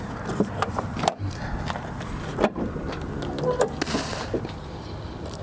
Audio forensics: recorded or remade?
remade